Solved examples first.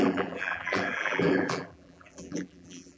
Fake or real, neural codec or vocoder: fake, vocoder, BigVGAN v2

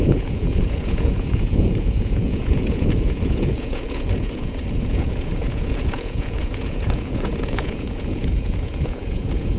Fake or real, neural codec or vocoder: fake, vocoder, Vocos